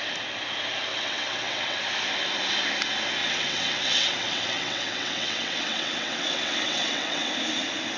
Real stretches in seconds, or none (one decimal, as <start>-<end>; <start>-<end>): 0.0-0.9; 1.8-3.2; 7.3-8.0